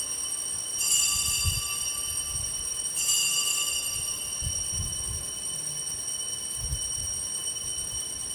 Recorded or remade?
recorded